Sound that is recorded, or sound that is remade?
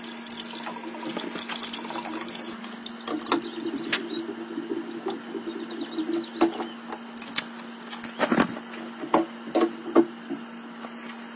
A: recorded